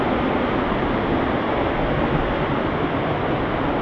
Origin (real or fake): real